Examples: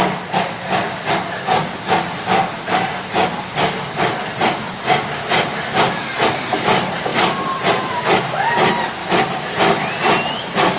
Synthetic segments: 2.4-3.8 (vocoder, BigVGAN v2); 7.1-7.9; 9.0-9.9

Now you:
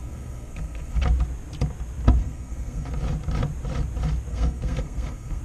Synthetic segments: 0.0-1.0 (codec, SNAC); 2.2-2.9; 4.3-5.4